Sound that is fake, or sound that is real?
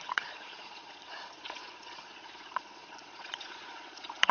fake